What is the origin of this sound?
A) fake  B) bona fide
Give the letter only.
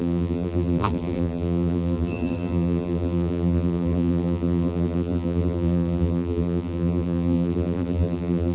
A